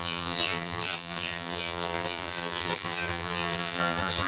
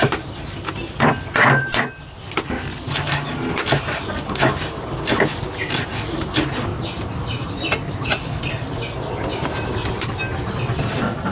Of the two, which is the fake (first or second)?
first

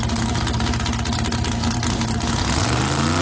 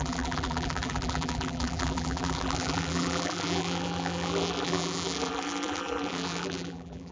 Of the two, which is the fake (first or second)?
second